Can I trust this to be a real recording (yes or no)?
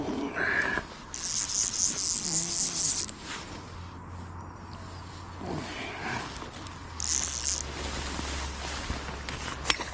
yes